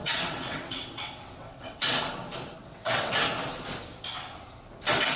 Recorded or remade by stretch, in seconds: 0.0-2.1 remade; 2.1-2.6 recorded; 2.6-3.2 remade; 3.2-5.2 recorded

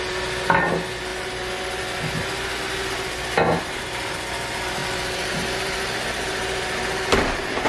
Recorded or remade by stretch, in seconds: 0.0-7.7 recorded

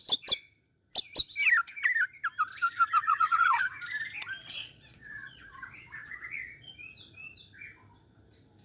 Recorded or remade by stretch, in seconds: 0.0-3.0 recorded; 3.0-3.7 remade; 3.7-4.4 recorded; 4.4-6.7 remade; 6.7-8.6 recorded

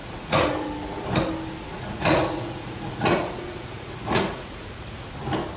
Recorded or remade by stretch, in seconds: 0.0-0.7 remade; 0.7-1.7 recorded; 1.7-5.1 remade; 5.1-5.6 recorded